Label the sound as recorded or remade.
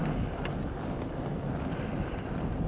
recorded